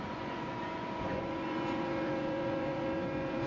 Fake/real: fake